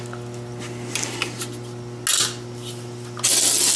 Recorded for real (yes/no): yes